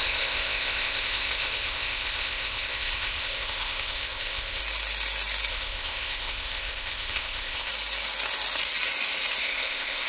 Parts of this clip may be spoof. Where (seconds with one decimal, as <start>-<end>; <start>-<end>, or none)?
0.0-4.6; 5.5-7.7; 9.4-10.1